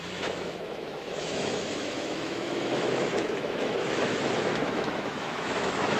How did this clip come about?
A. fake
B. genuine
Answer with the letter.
A